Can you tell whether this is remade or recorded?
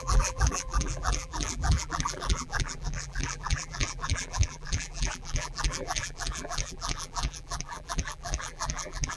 remade